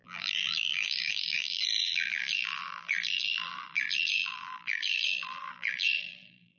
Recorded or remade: remade